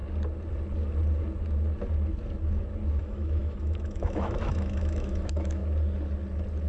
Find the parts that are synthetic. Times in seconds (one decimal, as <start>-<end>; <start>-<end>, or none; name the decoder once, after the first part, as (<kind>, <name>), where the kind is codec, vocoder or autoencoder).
3.0-5.6 (autoencoder, DAC-VAE)